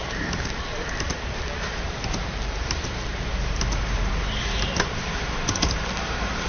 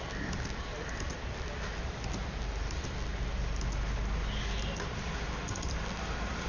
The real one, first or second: second